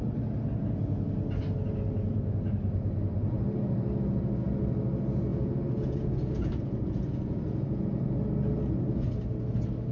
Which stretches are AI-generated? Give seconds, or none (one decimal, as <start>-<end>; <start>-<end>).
5.3-8.2